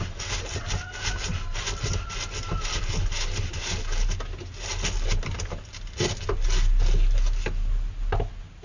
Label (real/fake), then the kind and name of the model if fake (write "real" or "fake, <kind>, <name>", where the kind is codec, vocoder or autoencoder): real